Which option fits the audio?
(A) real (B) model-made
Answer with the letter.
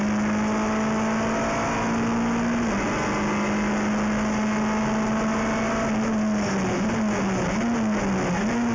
A